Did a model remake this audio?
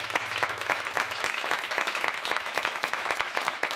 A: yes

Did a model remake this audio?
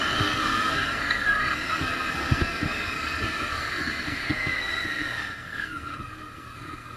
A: yes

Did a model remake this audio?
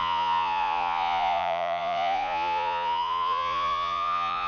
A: yes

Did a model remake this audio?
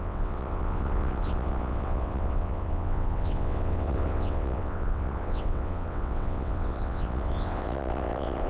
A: yes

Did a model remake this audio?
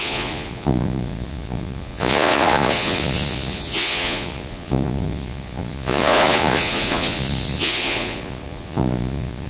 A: yes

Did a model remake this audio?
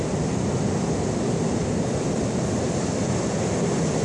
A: no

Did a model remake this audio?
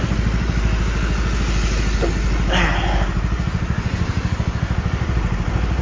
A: no